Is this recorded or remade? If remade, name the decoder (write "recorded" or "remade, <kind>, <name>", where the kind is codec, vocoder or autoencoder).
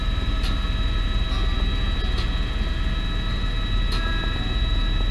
recorded